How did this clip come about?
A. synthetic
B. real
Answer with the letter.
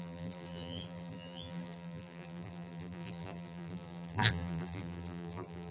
A